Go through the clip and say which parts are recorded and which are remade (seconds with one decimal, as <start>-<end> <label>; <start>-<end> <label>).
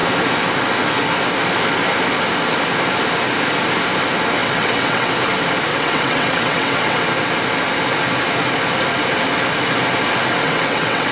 0.0-4.4 recorded; 4.4-5.1 remade; 5.1-5.7 recorded; 5.7-7.0 remade; 7.0-10.4 recorded; 10.4-11.1 remade